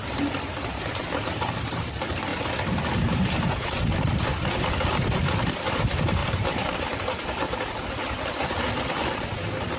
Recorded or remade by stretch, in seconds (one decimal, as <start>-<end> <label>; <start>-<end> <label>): 0.0-0.5 recorded; 0.5-9.8 remade